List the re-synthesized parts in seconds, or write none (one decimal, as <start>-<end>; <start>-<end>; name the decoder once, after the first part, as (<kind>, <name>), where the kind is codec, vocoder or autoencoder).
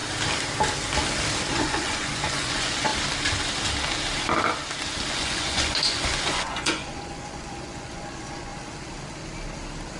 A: 1.5-2.9 (vocoder, Vocos); 5.1-8.5